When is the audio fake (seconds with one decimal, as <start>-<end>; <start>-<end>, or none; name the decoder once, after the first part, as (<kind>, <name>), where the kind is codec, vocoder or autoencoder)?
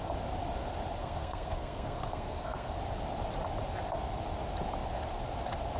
1.0-2.8 (codec, SNAC)